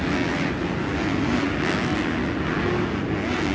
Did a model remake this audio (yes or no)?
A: no